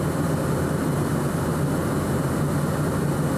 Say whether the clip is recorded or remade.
recorded